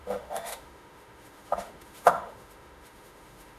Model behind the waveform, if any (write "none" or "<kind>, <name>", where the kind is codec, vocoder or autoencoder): autoencoder, DAC-VAE